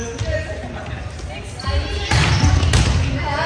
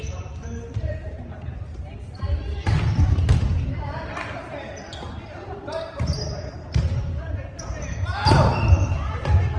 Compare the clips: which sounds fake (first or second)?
second